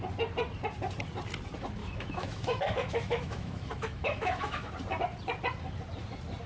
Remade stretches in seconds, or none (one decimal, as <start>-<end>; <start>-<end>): 1.8-4.7